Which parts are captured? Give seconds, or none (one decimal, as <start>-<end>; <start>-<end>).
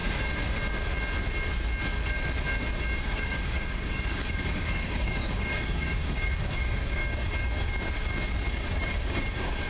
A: 0.0-3.0; 7.0-8.5